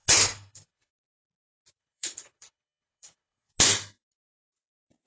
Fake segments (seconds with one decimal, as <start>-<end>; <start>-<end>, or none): 0.0-0.9; 1.8-3.5